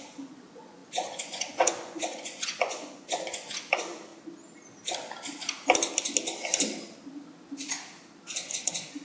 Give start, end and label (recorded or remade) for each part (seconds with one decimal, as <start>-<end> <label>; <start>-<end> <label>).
0.0-4.1 remade; 4.1-8.5 recorded; 8.5-9.0 remade